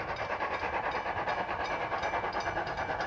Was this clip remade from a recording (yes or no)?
yes